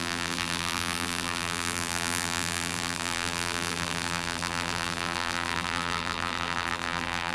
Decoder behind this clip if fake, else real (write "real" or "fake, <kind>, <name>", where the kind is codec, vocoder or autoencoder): fake, vocoder, BigVGAN v2